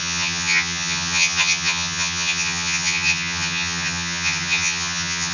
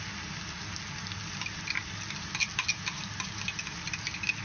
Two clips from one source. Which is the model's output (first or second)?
first